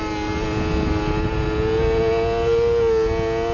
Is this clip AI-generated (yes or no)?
no